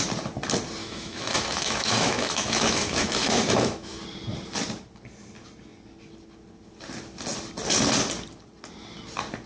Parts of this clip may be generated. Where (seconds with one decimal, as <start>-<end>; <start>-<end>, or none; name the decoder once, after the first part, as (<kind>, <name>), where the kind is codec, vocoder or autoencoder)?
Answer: 0.8-4.0 (autoencoder, DAC-VAE)